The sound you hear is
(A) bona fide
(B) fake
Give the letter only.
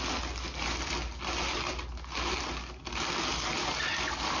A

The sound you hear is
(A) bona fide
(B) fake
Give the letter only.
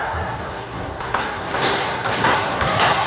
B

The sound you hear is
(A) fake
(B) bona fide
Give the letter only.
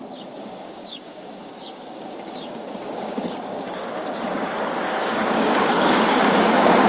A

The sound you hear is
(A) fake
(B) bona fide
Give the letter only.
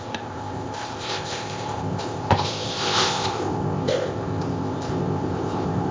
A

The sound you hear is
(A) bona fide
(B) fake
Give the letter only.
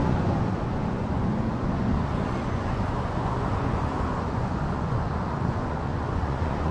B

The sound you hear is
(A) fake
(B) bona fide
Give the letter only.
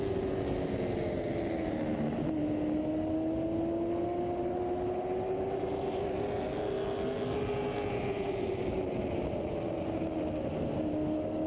B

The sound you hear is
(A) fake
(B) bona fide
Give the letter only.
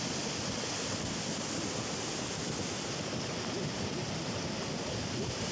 B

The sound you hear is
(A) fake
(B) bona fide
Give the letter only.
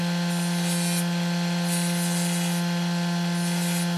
B